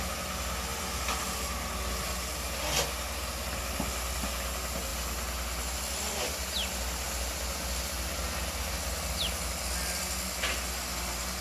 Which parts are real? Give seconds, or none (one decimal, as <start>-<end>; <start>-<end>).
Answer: 0.0-11.4